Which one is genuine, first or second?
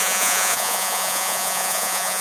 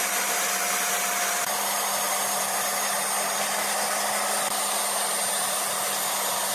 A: second